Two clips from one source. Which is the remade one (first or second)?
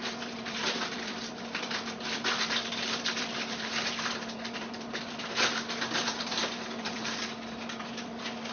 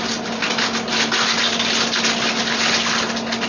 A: first